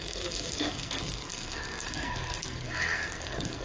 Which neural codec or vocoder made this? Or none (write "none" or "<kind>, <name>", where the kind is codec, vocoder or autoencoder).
codec, SNAC